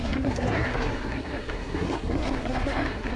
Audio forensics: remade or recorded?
remade